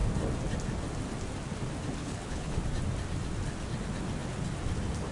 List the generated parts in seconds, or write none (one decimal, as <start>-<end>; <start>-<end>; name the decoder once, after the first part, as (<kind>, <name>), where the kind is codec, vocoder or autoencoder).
2.0-2.6 (codec, HILCodec)